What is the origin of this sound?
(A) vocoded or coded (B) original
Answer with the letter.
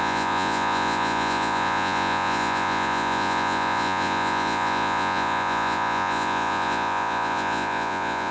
A